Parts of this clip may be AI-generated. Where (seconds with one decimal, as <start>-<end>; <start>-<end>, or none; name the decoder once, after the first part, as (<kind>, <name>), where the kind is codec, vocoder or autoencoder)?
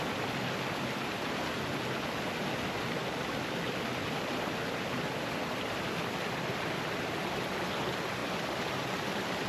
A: none